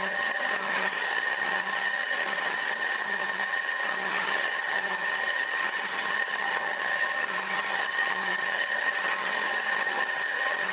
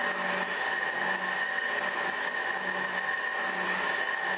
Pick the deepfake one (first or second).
first